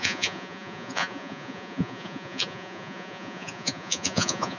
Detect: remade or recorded remade